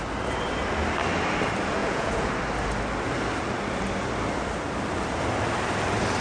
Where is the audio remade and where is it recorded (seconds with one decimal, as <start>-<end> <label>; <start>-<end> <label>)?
0.0-1.8 recorded; 1.8-2.3 remade; 2.3-6.2 recorded

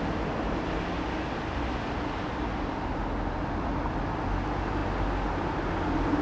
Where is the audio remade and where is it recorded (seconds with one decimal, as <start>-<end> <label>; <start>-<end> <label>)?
0.0-6.2 recorded

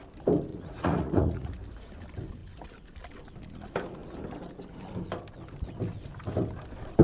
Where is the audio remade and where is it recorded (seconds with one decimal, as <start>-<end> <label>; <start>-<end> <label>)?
0.0-0.5 recorded; 0.5-1.5 remade; 1.5-7.0 recorded

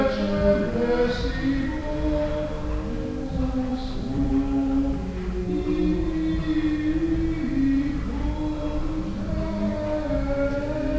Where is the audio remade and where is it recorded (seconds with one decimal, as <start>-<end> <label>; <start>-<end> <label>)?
0.0-3.7 recorded; 3.7-4.3 remade; 4.3-11.0 recorded